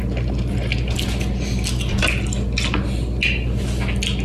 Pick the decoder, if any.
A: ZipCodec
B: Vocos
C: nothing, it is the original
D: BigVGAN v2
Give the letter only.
C